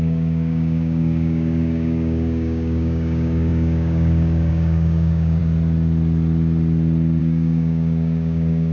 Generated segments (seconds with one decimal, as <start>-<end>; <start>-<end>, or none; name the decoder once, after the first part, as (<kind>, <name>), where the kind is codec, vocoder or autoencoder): 0.0-5.4 (codec, DAC); 7.2-8.7